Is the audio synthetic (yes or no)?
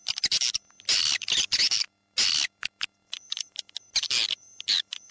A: no